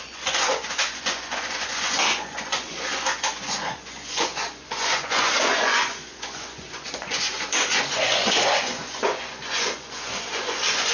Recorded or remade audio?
remade